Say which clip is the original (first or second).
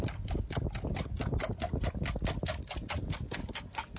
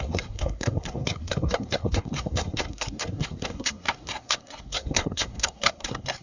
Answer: first